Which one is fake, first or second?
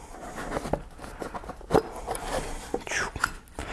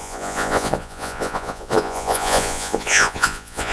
second